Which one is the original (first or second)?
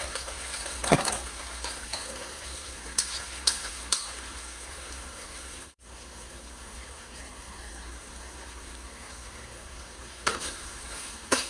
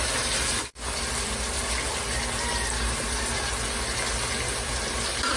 second